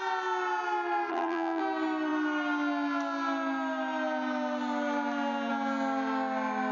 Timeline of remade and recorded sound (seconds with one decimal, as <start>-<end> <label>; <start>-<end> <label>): 0.0-1.1 recorded; 1.1-1.6 remade; 1.6-6.7 recorded